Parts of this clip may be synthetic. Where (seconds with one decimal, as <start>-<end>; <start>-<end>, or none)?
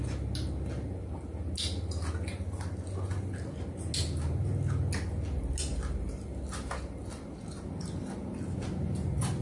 none